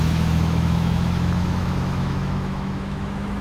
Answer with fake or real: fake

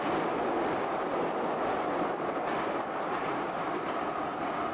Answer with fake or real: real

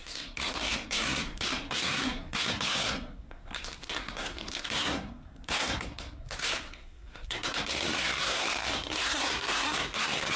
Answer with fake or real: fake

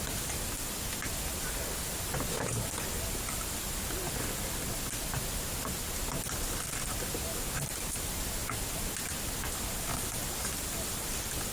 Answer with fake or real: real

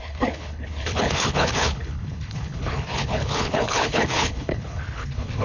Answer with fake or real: fake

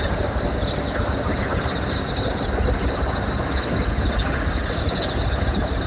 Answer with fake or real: real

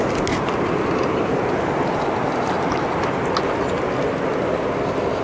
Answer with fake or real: real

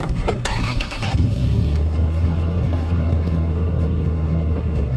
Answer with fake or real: fake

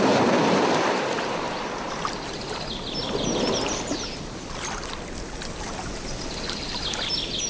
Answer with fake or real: real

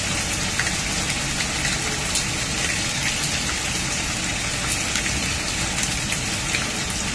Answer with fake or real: real